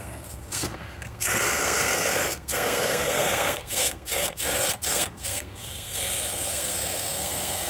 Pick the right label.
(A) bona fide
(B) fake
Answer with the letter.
B